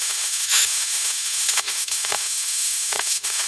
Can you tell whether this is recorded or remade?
remade